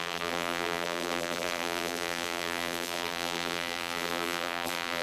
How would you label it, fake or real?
fake